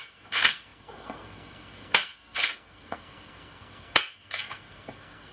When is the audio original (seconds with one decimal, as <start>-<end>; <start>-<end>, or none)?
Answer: none